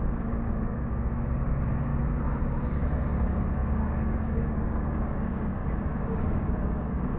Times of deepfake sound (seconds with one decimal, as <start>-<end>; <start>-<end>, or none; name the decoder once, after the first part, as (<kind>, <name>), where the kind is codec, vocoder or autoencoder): 0.0-1.9 (codec, DAC); 2.6-5.6; 6.2-7.2